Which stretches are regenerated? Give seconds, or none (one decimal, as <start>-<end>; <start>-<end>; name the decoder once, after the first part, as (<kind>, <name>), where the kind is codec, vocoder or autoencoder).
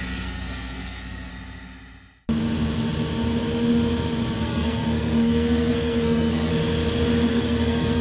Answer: 0.0-1.3 (codec, SNAC); 4.4-6.5; 7.3-8.0